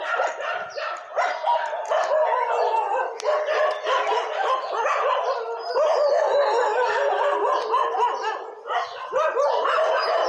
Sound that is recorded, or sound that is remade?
recorded